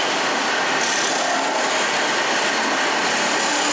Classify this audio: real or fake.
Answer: real